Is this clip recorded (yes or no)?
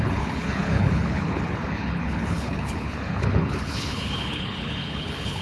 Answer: no